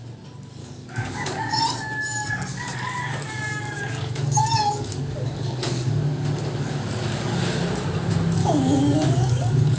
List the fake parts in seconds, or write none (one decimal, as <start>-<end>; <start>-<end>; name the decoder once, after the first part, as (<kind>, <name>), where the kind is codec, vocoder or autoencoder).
0.6-1.6 (codec, DAC); 2.5-7.4; 8.4-9.8